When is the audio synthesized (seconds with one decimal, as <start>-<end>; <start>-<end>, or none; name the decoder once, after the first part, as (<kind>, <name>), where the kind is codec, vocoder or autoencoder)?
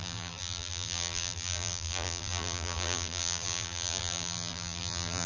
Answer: 0.0-5.3 (vocoder, BigVGAN v2)